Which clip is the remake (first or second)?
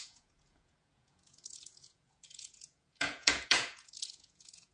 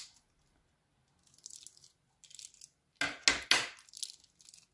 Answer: first